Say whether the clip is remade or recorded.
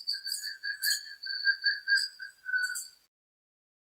recorded